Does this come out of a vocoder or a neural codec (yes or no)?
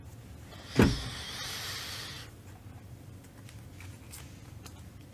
no